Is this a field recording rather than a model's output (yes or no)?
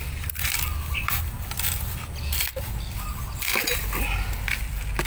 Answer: yes